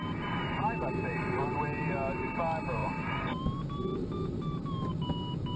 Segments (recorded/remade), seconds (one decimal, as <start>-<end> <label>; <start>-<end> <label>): 0.0-5.6 recorded